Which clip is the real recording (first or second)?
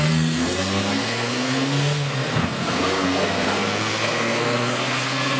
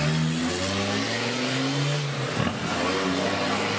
second